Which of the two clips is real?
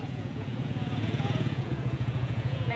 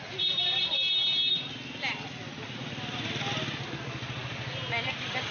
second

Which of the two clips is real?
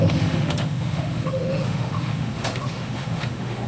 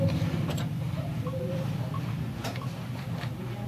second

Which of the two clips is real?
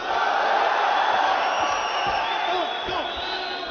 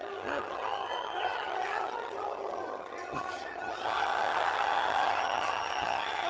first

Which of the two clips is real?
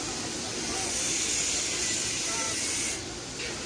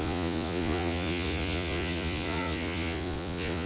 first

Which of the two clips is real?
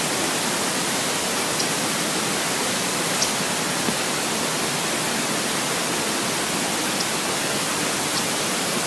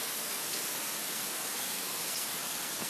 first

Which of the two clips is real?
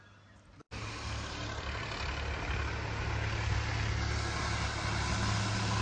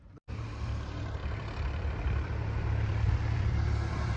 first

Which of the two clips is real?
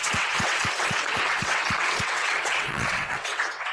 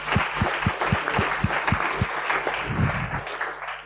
second